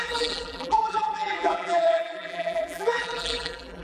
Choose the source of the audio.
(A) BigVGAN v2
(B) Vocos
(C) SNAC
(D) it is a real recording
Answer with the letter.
A